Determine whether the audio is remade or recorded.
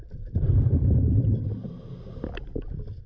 recorded